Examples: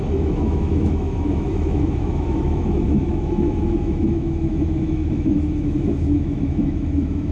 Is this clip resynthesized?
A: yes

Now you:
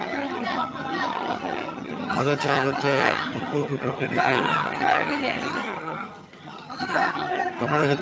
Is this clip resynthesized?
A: yes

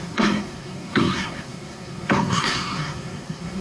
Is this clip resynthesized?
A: yes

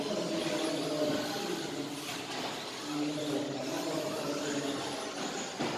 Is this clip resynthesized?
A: no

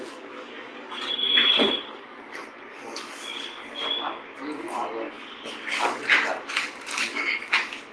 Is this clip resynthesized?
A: yes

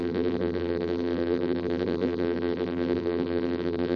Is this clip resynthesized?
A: yes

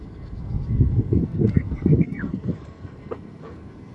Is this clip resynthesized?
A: yes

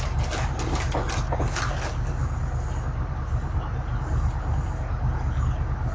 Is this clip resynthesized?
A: no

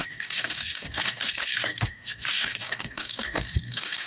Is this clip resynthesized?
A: yes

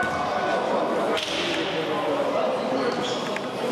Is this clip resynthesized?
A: no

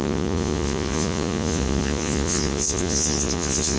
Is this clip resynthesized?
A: yes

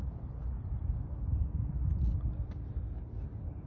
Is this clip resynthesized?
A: no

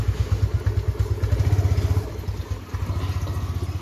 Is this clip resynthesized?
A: no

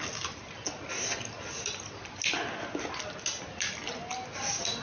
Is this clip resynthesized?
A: no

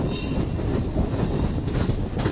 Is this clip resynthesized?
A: no